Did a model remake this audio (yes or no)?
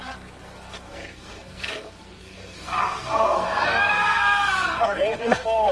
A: yes